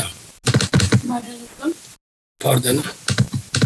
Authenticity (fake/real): real